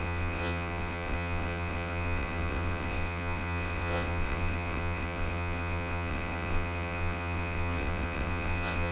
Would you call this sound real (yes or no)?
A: no